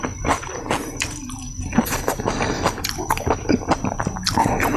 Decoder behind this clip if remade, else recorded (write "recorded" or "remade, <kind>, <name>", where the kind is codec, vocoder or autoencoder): recorded